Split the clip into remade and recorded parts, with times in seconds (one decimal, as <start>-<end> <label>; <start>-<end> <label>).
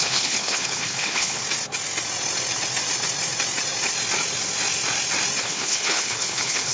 0.0-1.4 remade; 1.4-5.4 recorded; 5.4-6.7 remade